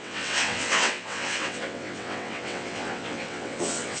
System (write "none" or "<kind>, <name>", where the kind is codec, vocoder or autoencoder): vocoder, WaveNeXt